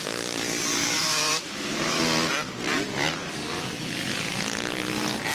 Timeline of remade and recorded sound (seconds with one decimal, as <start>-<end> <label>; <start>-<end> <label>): 0.0-0.8 recorded; 0.8-2.0 remade; 2.0-5.3 recorded

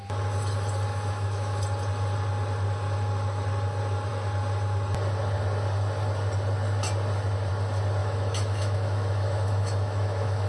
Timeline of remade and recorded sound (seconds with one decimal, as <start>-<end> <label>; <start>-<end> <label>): 0.0-0.9 recorded; 0.9-1.6 remade; 1.6-8.0 recorded; 8.0-10.5 remade

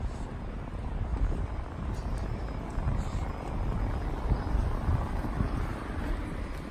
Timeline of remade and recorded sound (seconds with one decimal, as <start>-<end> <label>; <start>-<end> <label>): 0.0-6.7 recorded

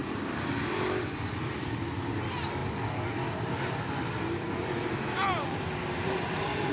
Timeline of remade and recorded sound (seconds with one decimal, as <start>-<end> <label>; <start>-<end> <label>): 0.0-1.8 remade; 1.8-2.6 recorded; 2.6-6.7 remade

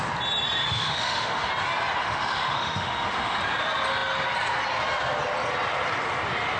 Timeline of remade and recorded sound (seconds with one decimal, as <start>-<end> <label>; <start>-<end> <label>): 0.0-0.6 recorded; 0.6-1.5 remade; 1.5-2.0 recorded; 2.0-3.4 remade; 3.4-6.6 recorded

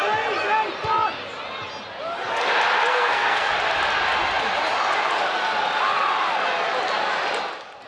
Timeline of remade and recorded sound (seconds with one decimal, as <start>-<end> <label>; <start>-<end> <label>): 0.0-2.9 recorded; 2.9-3.5 remade; 3.5-7.9 recorded

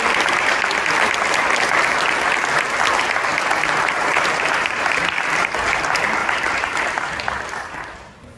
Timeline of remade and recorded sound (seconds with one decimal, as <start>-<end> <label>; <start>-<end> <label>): 0.0-3.3 recorded; 3.3-4.9 remade; 4.9-6.2 recorded; 6.2-7.2 remade; 7.2-8.4 recorded

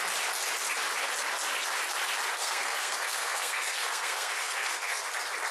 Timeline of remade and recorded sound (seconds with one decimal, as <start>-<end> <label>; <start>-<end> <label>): 0.0-2.4 recorded; 2.4-5.0 remade; 5.0-5.5 recorded